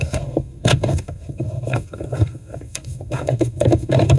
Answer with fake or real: fake